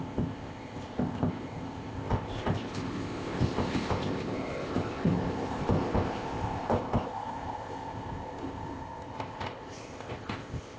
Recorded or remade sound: remade